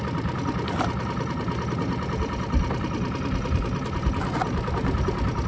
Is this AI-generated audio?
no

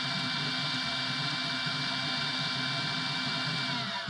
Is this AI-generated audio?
no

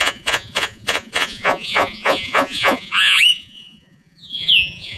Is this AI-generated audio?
yes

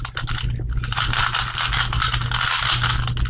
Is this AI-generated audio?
no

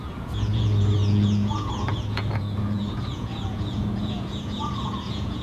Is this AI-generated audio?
yes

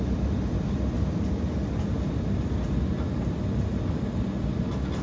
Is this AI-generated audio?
no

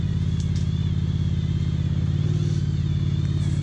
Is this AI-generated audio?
no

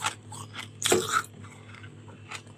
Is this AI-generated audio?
no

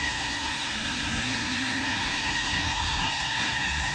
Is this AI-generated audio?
yes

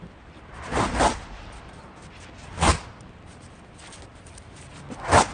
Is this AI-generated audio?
no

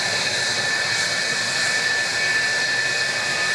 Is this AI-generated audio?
no